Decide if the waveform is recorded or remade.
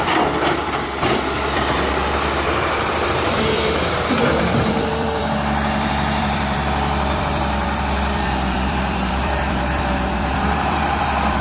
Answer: remade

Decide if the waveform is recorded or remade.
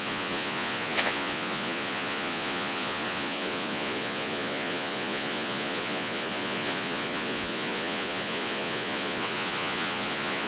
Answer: remade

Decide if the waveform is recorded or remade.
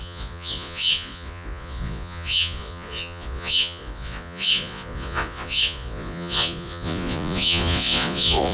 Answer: remade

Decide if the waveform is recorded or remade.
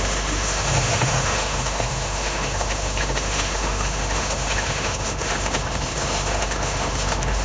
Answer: remade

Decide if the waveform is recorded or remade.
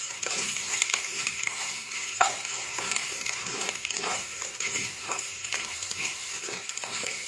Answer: remade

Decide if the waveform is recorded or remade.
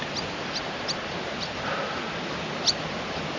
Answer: recorded